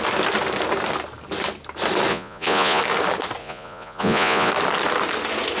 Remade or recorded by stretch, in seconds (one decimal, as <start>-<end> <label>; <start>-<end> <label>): 0.0-2.1 recorded; 2.1-2.8 remade; 2.8-3.4 recorded; 3.4-4.5 remade; 4.5-5.6 recorded